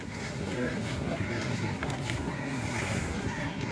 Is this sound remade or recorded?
remade